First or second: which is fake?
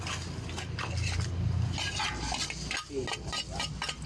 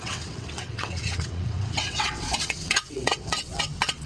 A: second